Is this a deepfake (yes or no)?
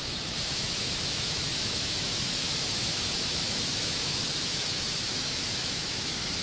yes